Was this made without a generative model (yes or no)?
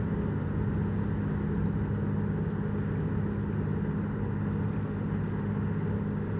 yes